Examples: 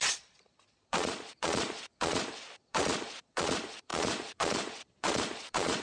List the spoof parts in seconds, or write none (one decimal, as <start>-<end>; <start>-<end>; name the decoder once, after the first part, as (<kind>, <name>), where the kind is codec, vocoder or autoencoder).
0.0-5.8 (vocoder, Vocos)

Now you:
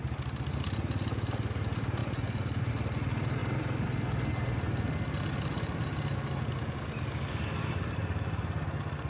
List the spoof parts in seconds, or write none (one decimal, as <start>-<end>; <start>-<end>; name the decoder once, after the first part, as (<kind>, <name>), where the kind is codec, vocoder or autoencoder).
2.0-2.7 (vocoder, Vocos)

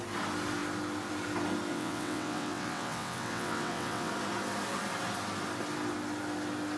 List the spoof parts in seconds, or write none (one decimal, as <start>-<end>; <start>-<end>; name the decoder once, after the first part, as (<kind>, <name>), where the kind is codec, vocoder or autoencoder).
1.7-4.1 (vocoder, WaveNeXt)

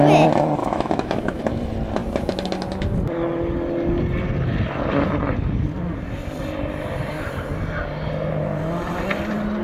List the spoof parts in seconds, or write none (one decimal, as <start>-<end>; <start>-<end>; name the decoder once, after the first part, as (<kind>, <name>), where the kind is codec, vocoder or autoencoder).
0.6-1.4 (autoencoder, DAC-VAE)